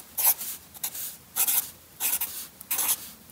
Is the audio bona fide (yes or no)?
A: yes